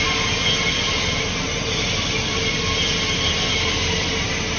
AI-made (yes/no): no